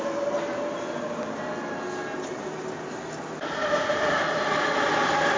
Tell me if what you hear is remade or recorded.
recorded